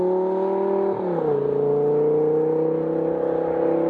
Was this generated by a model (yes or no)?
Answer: no